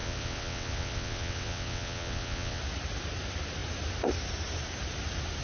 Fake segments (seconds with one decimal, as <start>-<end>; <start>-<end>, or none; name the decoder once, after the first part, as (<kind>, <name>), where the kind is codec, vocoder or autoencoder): 0.0-2.6 (vocoder, WaveNeXt)